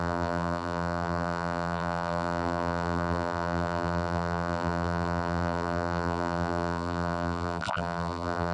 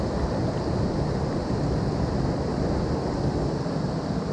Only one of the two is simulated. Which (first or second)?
first